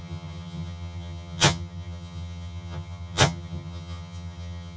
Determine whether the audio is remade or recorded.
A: remade